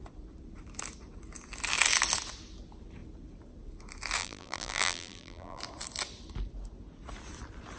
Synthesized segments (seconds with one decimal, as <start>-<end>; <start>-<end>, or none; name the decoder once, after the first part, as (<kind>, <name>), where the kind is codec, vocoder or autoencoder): 4.2-5.6 (vocoder, BigVGAN v2)